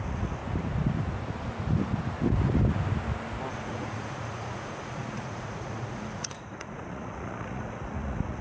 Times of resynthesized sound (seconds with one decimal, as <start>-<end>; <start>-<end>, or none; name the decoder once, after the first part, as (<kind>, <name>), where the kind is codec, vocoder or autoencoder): 0.0-0.4 (vocoder, Vocos); 3.5-8.4